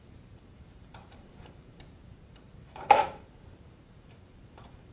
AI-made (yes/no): yes